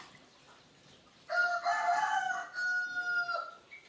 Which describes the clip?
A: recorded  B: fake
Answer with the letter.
A